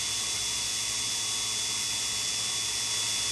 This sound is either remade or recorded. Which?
recorded